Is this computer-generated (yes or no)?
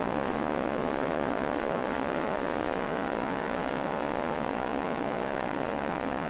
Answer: yes